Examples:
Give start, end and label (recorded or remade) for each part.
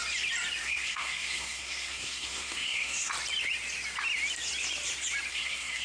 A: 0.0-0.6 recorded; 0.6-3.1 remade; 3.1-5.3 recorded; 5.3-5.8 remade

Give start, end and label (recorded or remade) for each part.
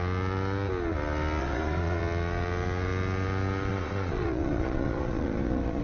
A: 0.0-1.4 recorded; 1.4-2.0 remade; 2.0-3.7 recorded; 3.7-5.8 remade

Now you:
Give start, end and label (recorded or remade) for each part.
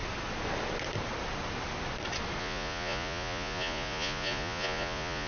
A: 0.0-2.4 recorded; 2.4-5.3 remade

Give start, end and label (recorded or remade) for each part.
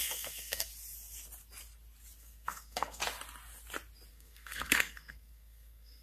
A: 0.0-0.7 remade; 0.7-2.2 recorded; 2.2-3.0 remade; 3.0-4.1 recorded; 4.1-6.0 remade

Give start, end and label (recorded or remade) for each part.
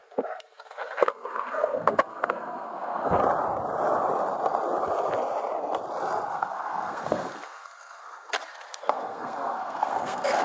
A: 0.0-3.2 remade; 3.2-6.3 recorded; 6.3-8.3 remade; 8.3-8.8 recorded; 8.8-10.4 remade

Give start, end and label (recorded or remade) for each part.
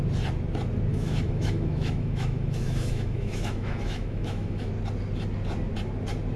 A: 0.0-0.9 recorded; 0.9-4.7 remade; 4.7-6.4 recorded